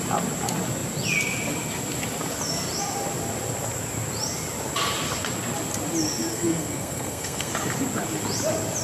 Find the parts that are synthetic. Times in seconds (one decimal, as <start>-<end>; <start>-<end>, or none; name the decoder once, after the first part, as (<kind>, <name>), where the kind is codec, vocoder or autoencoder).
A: 6.3-7.5 (codec, SNAC)

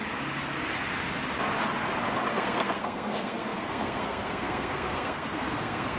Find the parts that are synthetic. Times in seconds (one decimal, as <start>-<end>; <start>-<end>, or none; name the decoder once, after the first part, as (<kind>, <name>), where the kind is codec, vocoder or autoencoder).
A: 2.3-6.0 (codec, SNAC)

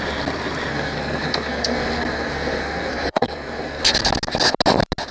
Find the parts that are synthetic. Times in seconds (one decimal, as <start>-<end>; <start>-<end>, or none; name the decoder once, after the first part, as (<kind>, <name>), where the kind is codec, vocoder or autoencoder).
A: 0.7-3.8 (codec, SNAC)